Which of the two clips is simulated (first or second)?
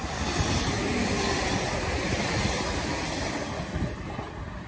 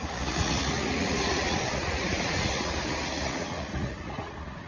second